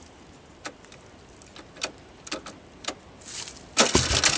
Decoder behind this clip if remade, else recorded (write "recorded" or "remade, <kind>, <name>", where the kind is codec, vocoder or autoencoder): recorded